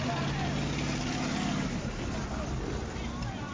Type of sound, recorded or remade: recorded